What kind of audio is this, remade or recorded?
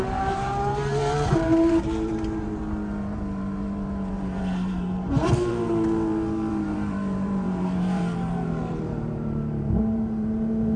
remade